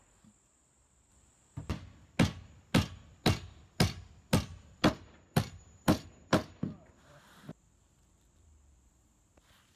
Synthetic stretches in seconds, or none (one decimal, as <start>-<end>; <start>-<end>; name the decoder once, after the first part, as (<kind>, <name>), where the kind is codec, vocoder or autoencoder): 1.1-1.7 (vocoder, BigVGAN v2); 4.5-9.2